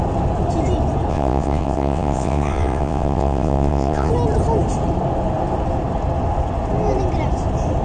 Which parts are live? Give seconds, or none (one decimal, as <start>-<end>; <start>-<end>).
0.0-1.1; 4.1-7.8